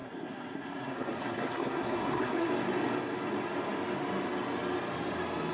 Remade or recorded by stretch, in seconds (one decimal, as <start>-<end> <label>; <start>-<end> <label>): 0.0-2.5 remade; 2.5-5.5 recorded